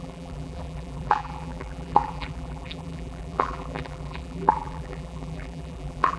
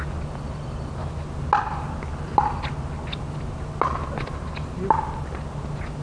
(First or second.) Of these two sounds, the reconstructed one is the first